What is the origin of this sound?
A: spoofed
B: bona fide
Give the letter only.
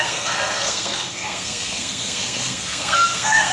A